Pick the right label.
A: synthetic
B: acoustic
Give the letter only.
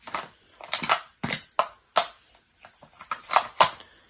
B